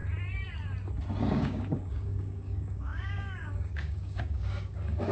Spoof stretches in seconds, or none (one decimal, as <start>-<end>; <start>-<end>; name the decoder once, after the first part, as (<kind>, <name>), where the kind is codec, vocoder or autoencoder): 1.2-5.1 (codec, DAC)